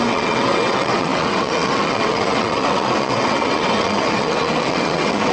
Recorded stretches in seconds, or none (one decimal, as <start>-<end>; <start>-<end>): none